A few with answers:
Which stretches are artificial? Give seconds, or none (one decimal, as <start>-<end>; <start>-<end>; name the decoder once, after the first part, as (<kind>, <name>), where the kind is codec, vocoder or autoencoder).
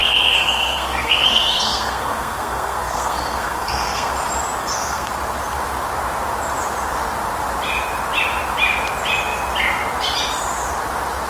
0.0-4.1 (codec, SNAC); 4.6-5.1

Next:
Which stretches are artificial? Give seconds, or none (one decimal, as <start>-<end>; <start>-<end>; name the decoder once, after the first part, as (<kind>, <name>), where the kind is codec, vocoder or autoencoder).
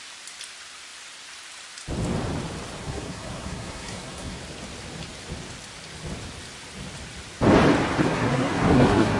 2.8-4.4 (codec, SNAC); 8.0-9.2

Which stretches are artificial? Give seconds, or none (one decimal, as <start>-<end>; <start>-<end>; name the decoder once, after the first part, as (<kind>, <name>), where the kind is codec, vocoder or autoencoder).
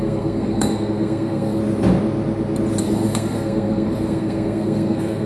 0.0-1.6 (codec, SNAC); 2.8-5.3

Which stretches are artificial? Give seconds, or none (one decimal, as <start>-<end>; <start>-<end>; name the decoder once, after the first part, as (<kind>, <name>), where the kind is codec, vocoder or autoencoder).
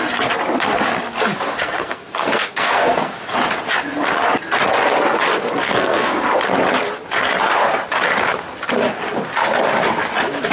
1.6-3.2 (codec, SNAC); 5.6-6.2